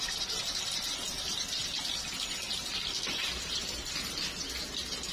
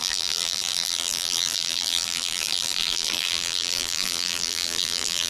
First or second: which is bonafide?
first